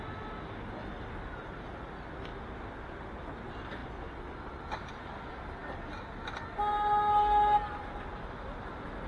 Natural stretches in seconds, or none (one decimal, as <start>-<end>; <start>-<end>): 0.0-9.1